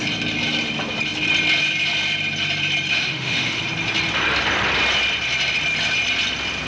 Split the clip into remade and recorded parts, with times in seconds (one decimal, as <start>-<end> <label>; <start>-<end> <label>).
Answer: 0.0-2.9 recorded; 2.9-3.6 remade; 3.6-6.7 recorded